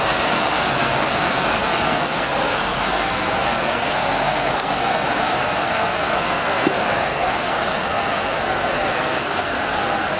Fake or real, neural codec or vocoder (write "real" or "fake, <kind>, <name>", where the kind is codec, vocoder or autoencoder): fake, codec, SNAC